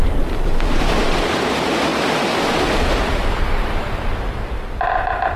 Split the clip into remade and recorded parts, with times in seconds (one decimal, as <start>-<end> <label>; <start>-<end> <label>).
0.0-5.4 remade